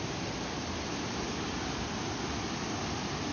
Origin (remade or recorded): recorded